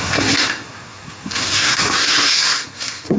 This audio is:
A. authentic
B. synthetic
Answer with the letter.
B